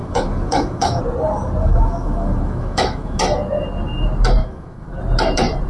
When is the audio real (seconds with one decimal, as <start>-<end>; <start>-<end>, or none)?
1.0-1.6; 3.2-4.4; 5.0-5.7